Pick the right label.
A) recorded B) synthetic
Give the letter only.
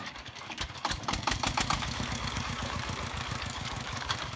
B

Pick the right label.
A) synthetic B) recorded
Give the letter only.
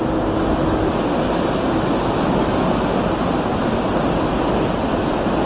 B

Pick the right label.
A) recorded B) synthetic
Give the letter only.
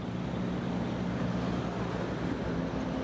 A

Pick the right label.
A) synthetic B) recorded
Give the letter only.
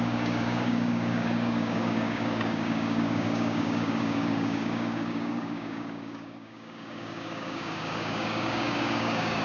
A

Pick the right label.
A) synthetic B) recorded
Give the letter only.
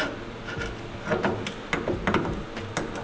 B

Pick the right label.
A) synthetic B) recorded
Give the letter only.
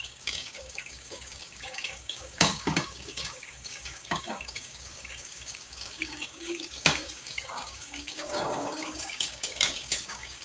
A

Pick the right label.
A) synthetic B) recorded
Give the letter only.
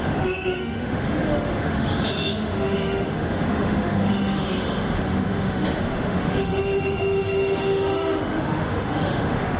A